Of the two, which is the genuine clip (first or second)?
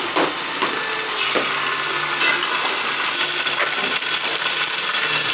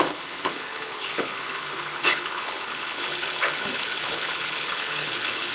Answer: first